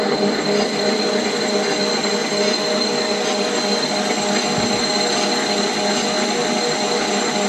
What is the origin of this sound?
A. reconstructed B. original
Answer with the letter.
B